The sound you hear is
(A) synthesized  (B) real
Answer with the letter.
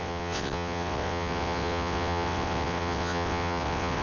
A